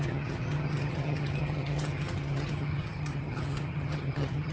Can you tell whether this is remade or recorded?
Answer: remade